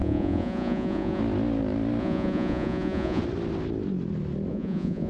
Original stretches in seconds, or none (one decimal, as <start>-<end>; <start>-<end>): 1.2-2.0; 3.2-4.5